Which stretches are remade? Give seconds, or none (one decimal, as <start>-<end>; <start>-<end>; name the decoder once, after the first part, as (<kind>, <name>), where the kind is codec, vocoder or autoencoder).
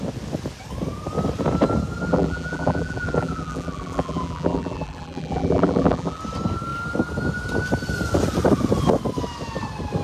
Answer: 2.1-6.2 (vocoder, BigVGAN v2)